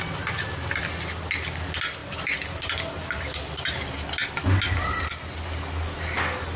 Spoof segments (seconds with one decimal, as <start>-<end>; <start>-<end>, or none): 0.0-0.8; 2.0-4.1